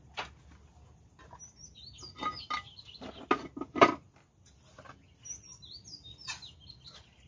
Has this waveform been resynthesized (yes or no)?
no